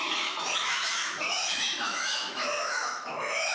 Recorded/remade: remade